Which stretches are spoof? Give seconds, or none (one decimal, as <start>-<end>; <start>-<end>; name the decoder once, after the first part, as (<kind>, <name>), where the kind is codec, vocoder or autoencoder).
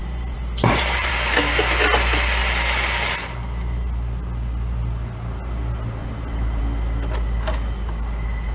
0.0-1.1 (vocoder, BigVGAN v2); 6.0-6.6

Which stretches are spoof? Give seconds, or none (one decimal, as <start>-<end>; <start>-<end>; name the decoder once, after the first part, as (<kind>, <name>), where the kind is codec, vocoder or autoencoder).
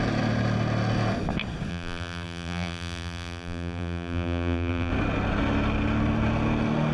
1.7-4.9 (vocoder, BigVGAN v2)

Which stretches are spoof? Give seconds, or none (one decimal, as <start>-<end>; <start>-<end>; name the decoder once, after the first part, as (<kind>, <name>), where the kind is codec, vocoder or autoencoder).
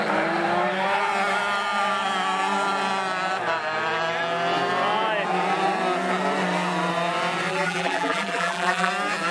7.5-8.9 (vocoder, BigVGAN v2)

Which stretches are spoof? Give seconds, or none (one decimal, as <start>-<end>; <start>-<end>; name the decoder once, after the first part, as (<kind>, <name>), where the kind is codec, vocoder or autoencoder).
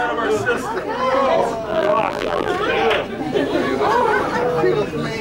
1.7-2.5 (vocoder, BigVGAN v2)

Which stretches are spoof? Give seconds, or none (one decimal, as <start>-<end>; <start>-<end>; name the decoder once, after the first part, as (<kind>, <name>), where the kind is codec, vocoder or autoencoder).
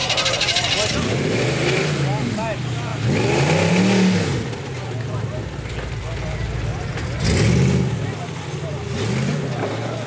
0.0-1.8 (vocoder, BigVGAN v2)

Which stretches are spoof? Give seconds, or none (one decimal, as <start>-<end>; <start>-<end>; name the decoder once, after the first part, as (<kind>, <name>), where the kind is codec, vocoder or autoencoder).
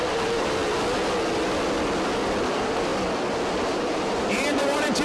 0.0-0.6 (vocoder, BigVGAN v2); 2.4-2.9; 3.6-5.0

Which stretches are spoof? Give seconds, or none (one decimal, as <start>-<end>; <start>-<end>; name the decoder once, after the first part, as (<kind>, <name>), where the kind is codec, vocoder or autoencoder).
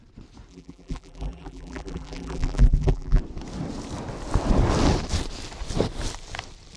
0.5-3.2 (vocoder, BigVGAN v2)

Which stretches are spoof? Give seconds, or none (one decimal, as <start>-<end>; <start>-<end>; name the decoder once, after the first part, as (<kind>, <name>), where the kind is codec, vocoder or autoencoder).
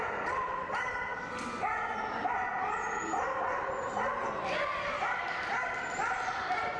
0.0-1.1 (vocoder, BigVGAN v2); 5.2-6.8